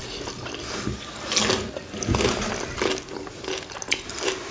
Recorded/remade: recorded